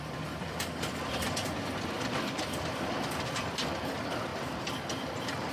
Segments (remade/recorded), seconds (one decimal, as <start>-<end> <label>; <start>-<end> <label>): 0.0-4.3 recorded; 4.3-5.5 remade